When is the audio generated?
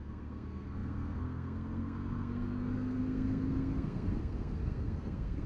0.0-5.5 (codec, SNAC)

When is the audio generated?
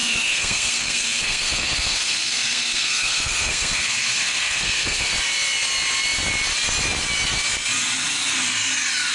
0.0-5.1 (codec, SNAC)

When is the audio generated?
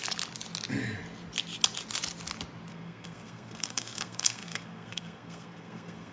2.7-6.1 (codec, SNAC)